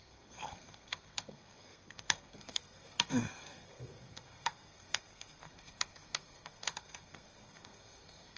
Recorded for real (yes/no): no